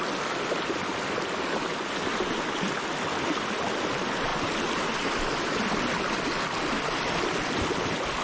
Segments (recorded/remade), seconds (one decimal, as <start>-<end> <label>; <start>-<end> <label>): 0.0-8.2 recorded